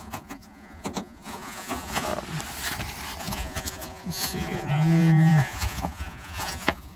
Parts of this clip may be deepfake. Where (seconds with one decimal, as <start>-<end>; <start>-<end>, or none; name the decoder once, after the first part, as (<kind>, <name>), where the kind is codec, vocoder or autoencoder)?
0.0-2.1 (vocoder, Vocos); 3.2-7.0